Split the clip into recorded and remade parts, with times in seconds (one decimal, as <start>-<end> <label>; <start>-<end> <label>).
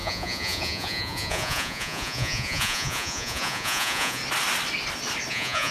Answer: 0.0-4.2 remade; 4.2-5.3 recorded; 5.3-5.7 remade